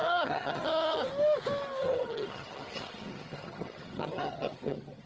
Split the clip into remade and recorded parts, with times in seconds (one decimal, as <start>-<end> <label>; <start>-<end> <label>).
0.0-1.1 remade; 1.1-1.8 recorded; 1.8-5.1 remade